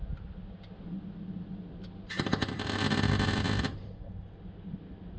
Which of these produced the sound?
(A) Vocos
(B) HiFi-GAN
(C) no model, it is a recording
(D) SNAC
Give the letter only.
C